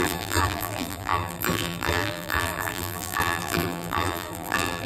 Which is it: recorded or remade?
remade